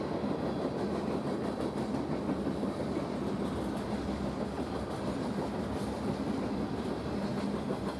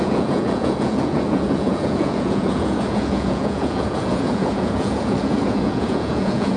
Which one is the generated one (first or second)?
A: second